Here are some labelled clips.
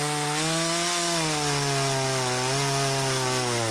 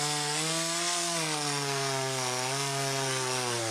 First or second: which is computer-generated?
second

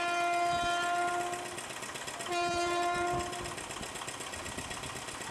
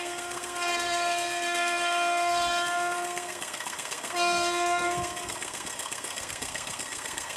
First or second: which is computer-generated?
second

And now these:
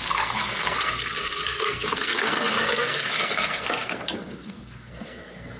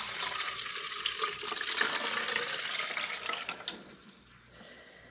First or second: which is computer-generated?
first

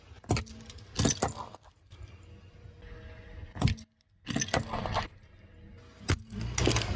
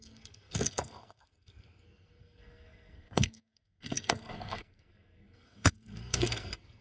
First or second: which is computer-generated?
second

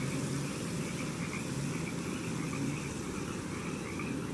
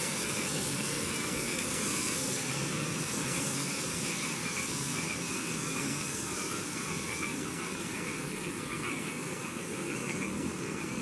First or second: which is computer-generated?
second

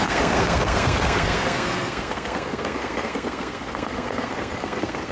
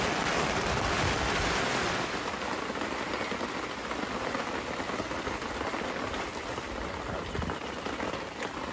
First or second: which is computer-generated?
first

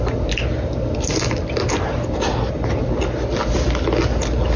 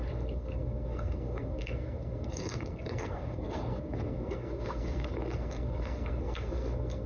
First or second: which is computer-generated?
second